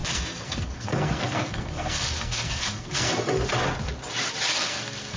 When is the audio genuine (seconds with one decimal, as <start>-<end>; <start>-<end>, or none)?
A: 3.1-4.5